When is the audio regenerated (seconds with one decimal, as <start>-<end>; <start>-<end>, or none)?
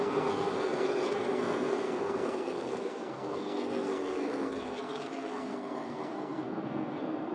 0.0-7.3